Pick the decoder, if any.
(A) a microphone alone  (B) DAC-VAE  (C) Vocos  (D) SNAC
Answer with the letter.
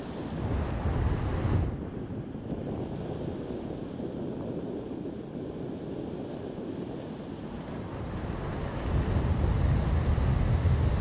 A